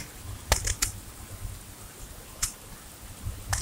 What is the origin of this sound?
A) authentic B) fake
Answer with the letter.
A